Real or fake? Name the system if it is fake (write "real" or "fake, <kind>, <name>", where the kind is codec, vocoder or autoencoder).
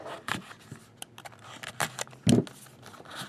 real